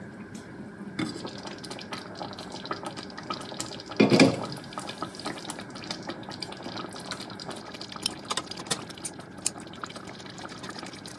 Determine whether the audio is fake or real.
real